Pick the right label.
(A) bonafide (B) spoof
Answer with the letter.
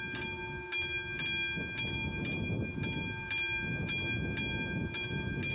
A